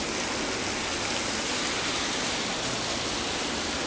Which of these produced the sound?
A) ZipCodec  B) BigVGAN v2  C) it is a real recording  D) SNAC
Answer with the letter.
C